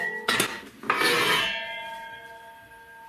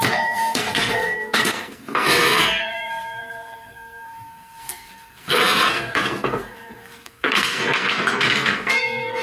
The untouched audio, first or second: first